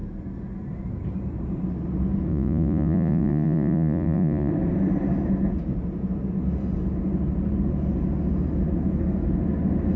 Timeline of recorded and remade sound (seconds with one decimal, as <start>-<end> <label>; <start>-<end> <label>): 0.0-2.3 recorded; 2.3-4.5 remade; 4.5-10.0 recorded